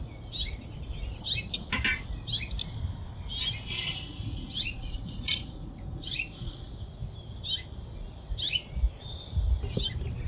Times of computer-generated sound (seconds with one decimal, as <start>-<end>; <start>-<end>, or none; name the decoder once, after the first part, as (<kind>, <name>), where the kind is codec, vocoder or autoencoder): 3.9-6.7 (vocoder, Vocos)